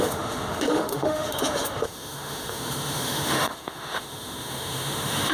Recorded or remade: remade